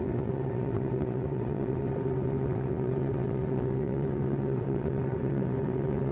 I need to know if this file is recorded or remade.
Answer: remade